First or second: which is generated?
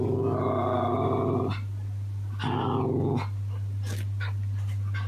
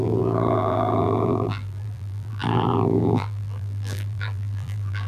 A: second